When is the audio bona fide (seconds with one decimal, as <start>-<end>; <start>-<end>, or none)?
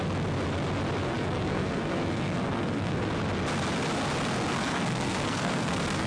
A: 0.0-1.1; 3.1-4.5